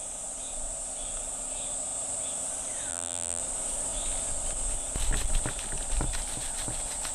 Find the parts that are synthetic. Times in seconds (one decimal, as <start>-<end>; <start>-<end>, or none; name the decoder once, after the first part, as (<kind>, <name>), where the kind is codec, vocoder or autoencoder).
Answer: 2.9-3.4 (vocoder, BigVGAN v2)

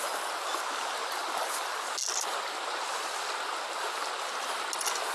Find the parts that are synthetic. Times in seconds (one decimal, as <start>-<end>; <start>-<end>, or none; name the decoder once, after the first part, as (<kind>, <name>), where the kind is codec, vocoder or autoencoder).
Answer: 1.0-1.9 (vocoder, BigVGAN v2); 2.3-4.0

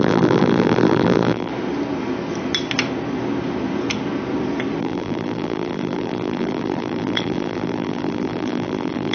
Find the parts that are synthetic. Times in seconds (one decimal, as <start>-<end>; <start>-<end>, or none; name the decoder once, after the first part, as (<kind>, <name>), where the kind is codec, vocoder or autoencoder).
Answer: 0.0-1.5 (vocoder, BigVGAN v2); 4.8-9.1

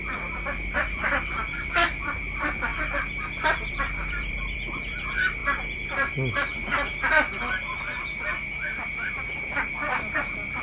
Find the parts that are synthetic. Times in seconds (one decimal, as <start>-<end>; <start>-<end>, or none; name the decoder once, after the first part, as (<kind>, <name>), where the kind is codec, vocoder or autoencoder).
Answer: 0.0-10.6 (vocoder, BigVGAN v2)